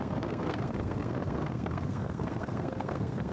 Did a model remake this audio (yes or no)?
yes